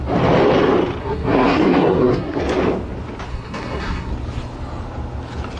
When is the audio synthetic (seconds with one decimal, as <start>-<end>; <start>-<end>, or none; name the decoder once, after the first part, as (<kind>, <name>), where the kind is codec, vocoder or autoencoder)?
1.0-2.4 (codec, SNAC); 3.3-4.1